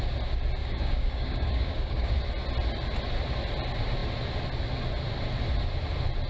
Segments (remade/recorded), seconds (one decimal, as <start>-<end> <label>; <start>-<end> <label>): 0.0-0.6 recorded; 0.6-2.1 remade; 2.1-6.3 recorded